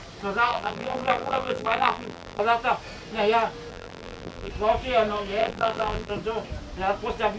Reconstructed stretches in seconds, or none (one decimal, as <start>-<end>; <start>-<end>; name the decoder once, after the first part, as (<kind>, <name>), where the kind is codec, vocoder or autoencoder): 0.5-2.4 (vocoder, BigVGAN v2); 3.7-4.5; 5.4-6.1